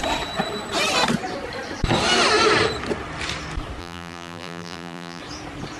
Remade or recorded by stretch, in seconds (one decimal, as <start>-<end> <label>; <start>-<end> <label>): 0.0-3.8 recorded; 3.8-5.2 remade; 5.2-5.8 recorded